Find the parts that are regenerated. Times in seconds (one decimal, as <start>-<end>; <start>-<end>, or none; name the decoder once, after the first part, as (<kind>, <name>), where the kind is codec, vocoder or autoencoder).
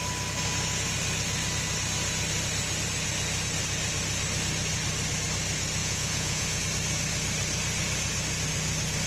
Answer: 5.8-6.6 (vocoder, Vocos)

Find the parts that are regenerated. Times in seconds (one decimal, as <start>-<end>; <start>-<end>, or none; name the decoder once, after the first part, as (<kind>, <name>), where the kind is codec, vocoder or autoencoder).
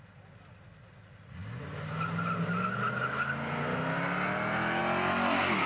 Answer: none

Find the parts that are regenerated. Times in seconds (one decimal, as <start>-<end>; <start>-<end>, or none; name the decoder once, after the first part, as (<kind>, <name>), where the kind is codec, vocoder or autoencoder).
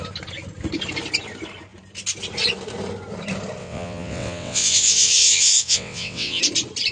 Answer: 3.6-6.4 (vocoder, WaveNeXt)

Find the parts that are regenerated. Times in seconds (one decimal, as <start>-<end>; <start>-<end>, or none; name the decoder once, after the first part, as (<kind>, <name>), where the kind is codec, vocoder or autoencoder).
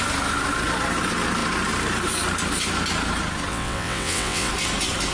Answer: 3.5-4.5 (vocoder, WaveNeXt)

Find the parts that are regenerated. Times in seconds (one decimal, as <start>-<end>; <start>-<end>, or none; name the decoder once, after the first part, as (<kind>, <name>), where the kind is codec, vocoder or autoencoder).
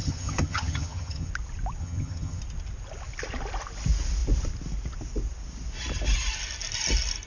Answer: 0.0-1.3 (vocoder, HiFi-GAN); 1.8-2.4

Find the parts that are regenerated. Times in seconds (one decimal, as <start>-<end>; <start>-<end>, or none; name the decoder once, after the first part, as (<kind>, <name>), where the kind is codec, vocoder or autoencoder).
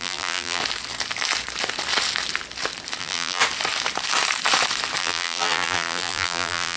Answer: 0.0-0.6 (vocoder, BigVGAN v2); 3.0-3.4; 5.0-6.8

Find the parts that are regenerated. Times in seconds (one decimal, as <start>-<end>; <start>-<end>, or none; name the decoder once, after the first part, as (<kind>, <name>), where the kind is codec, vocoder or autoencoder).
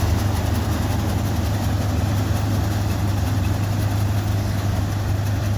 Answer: 4.3-4.8 (codec, DAC)